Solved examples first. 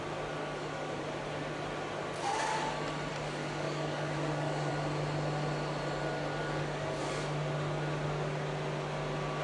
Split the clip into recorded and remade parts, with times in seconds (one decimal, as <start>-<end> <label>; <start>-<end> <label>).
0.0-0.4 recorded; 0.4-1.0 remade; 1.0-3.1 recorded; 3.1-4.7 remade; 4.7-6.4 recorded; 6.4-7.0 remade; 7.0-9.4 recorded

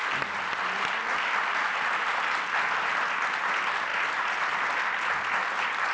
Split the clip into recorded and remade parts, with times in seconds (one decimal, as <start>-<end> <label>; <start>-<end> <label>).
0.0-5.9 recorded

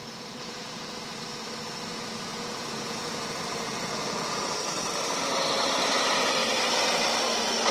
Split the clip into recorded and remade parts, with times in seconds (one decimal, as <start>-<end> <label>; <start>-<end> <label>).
0.0-1.0 remade; 1.0-2.3 recorded; 2.3-4.4 remade; 4.4-7.7 recorded

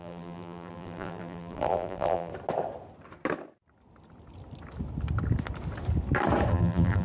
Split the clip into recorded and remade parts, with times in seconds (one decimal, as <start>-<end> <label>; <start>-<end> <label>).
0.0-2.3 remade; 2.3-6.5 recorded; 6.5-7.0 remade

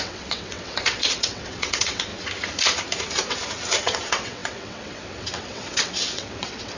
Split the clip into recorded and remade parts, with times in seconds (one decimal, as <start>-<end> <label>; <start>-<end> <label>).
0.0-2.1 remade; 2.1-3.3 recorded; 3.3-6.8 remade